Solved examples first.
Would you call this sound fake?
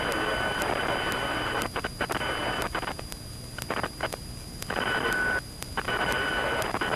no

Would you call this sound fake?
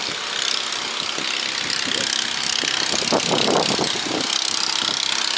no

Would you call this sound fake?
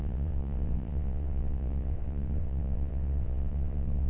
yes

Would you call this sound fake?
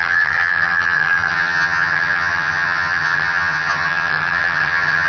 yes